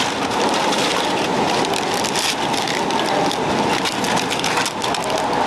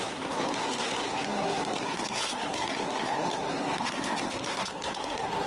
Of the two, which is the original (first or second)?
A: first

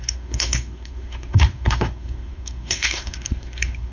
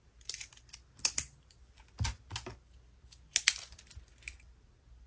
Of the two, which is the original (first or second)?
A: second